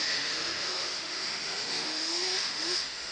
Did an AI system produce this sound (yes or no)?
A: yes